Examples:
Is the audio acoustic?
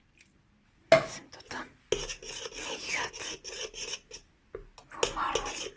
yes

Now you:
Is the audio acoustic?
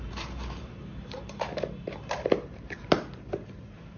no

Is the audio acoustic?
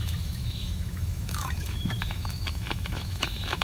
no